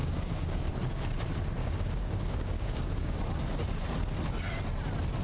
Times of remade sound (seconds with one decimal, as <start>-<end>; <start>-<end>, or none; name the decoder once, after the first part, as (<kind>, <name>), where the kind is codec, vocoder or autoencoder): 0.0-0.7 (codec, DAC); 1.6-3.2